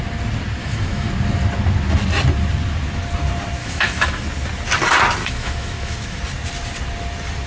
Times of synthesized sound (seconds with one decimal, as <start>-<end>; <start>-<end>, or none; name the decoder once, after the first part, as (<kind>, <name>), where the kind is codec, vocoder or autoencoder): 0.6-1.1 (autoencoder, DAC-VAE); 3.6-4.2; 5.2-6.2